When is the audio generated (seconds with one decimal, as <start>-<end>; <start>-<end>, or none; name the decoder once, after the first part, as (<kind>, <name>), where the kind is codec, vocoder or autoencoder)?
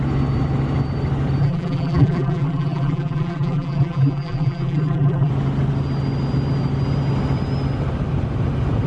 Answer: 1.4-5.3 (vocoder, BigVGAN v2)